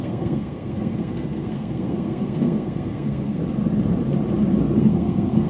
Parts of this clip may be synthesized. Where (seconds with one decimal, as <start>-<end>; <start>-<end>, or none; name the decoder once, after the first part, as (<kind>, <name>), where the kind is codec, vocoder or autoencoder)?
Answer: 0.0-3.4 (codec, SNAC); 4.8-5.5